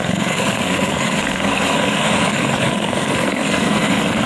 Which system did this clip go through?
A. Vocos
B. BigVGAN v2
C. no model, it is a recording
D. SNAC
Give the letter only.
D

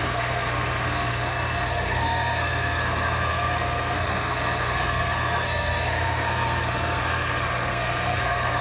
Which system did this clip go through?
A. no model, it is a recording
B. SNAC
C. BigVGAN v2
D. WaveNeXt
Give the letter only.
B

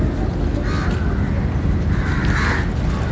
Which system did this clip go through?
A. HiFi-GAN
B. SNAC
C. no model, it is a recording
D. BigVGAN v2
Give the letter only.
C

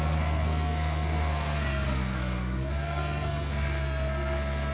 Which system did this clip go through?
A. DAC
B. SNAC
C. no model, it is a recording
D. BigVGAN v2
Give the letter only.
B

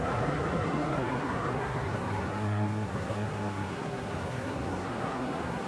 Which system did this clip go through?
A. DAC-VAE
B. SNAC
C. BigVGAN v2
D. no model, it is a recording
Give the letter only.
B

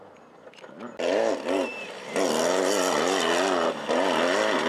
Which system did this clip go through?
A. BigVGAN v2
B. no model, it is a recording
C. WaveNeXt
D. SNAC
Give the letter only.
B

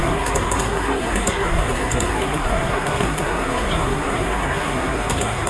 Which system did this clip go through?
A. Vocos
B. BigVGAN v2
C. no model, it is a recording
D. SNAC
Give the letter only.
D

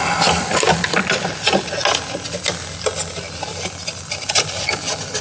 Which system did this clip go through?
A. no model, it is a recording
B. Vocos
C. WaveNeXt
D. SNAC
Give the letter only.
A